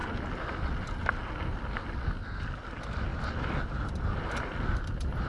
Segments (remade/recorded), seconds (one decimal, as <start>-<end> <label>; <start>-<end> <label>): 0.0-5.3 recorded